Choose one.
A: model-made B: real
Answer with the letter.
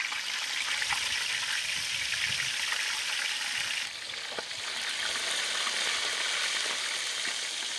B